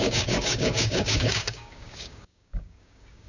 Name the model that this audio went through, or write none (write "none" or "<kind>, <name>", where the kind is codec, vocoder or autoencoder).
codec, DAC